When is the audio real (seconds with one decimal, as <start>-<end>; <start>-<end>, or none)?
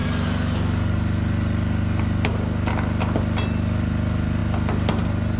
0.0-5.4